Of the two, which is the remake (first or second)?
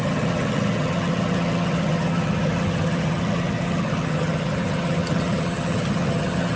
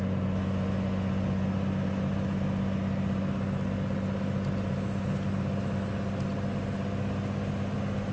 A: first